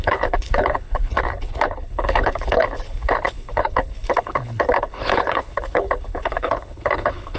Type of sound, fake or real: fake